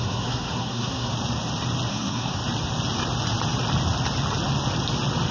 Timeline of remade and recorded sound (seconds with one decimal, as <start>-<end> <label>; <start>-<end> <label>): 0.0-1.1 remade; 1.1-1.9 recorded; 1.9-2.4 remade; 2.4-5.3 recorded